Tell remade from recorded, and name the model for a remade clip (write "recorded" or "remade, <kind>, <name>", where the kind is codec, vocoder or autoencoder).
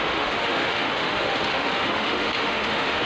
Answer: remade, autoencoder, DAC-VAE